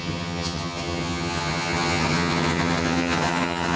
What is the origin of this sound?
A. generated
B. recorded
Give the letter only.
A